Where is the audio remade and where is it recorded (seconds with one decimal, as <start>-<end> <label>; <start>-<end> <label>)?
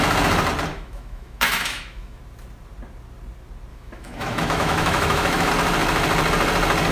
0.0-0.7 recorded; 0.7-2.2 remade; 2.2-3.7 recorded; 3.7-5.5 remade; 5.5-6.9 recorded